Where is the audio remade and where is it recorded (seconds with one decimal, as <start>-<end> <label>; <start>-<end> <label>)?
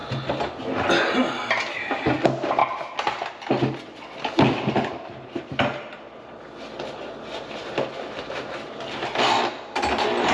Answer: 0.0-4.9 recorded; 4.9-6.4 remade; 6.4-10.3 recorded